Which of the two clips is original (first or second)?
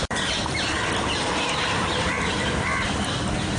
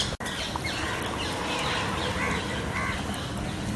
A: second